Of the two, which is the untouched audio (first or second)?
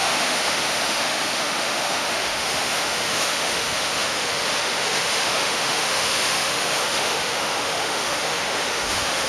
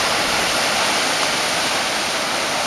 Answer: second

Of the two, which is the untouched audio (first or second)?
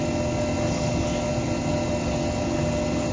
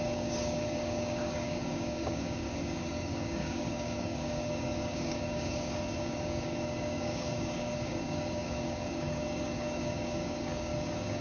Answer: first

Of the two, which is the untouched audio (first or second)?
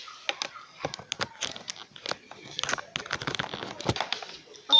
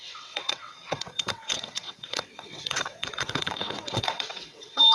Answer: first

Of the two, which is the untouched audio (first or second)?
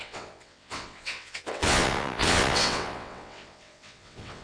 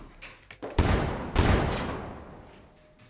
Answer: second